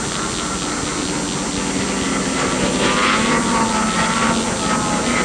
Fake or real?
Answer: real